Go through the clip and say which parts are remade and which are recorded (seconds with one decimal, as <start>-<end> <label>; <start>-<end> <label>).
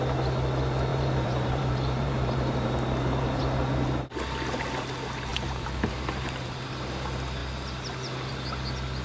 0.0-0.9 recorded; 0.9-3.4 remade; 3.4-5.3 recorded; 5.3-6.6 remade; 6.6-9.0 recorded